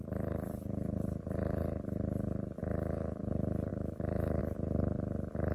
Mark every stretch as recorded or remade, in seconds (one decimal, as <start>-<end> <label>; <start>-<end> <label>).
0.0-2.6 recorded; 2.6-3.2 remade; 3.2-3.7 recorded; 3.7-4.4 remade; 4.4-5.5 recorded